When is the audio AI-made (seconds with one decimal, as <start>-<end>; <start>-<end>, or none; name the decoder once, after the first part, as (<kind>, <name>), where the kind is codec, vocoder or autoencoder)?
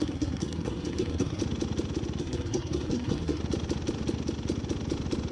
0.0-1.4 (codec, SNAC); 2.2-3.4